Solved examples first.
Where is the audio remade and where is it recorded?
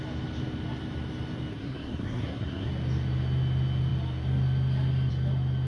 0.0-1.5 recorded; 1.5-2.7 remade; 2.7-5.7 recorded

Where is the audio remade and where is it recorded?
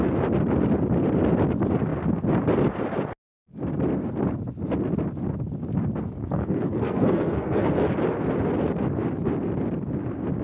0.0-6.2 recorded; 6.2-7.7 remade; 7.7-10.4 recorded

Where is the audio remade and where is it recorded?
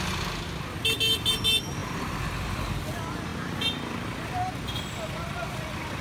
0.0-1.8 recorded; 1.8-2.8 remade; 2.8-6.0 recorded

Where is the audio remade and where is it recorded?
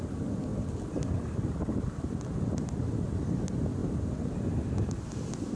0.0-5.6 recorded